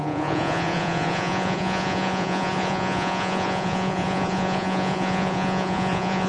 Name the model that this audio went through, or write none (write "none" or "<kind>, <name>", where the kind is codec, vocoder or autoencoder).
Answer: vocoder, Vocos